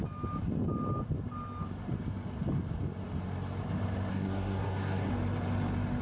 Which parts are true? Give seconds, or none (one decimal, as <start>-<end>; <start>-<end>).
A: 0.0-4.1; 5.1-6.0